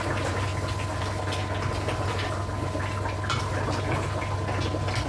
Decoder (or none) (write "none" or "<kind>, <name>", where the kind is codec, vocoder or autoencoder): none